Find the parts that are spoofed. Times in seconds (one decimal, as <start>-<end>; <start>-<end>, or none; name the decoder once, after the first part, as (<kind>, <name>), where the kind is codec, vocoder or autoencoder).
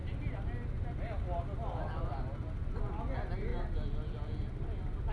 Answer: none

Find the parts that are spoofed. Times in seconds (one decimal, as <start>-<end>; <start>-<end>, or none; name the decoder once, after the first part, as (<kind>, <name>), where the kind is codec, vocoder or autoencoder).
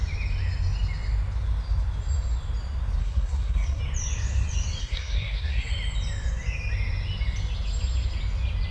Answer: 3.0-3.8 (codec, SNAC); 4.8-5.7